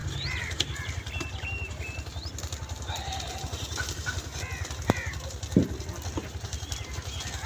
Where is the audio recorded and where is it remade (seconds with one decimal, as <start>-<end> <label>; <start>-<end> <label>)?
0.0-4.4 remade; 4.4-6.2 recorded; 6.2-6.9 remade; 6.9-7.5 recorded